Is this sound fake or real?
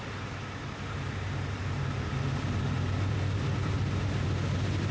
fake